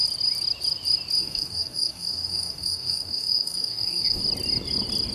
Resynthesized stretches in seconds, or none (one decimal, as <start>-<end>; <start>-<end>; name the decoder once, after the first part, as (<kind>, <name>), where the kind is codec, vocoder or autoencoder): 1.2-4.2 (codec, DAC)